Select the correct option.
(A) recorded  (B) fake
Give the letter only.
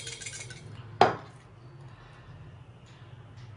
A